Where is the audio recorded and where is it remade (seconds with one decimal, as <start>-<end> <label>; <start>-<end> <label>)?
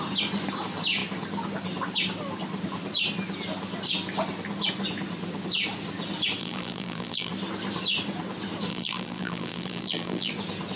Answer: 0.0-6.4 recorded; 6.4-7.3 remade; 7.3-8.7 recorded; 8.7-10.3 remade; 10.3-10.8 recorded